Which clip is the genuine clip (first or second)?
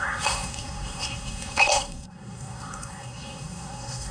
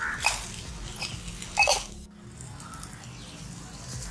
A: second